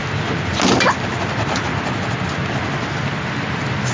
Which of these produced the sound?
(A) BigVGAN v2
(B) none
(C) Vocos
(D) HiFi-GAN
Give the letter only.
B